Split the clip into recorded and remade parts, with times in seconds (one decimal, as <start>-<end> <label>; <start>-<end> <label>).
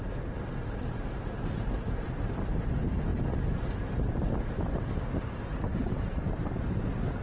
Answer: 0.0-3.1 remade; 3.1-5.3 recorded; 5.3-7.2 remade